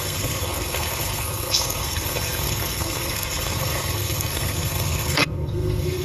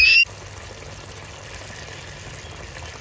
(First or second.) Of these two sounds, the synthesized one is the first